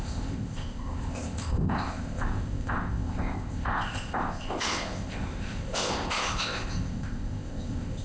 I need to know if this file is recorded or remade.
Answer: remade